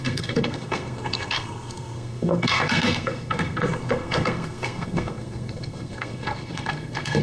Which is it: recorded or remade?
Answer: remade